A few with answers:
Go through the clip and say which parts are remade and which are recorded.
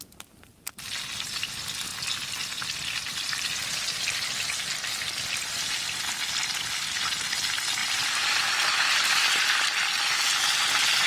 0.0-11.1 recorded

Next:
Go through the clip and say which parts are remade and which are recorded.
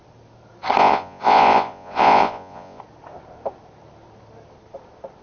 0.0-0.8 recorded; 0.8-2.8 remade; 2.8-5.2 recorded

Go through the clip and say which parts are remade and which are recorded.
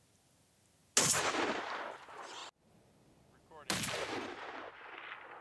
0.0-5.4 recorded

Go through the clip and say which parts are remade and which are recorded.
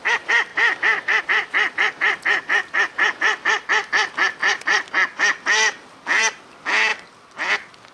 0.0-7.9 recorded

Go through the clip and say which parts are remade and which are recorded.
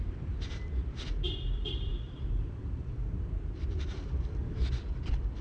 0.0-5.4 remade